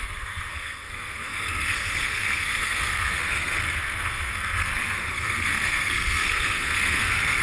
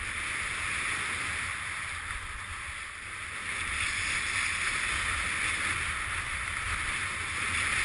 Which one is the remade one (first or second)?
first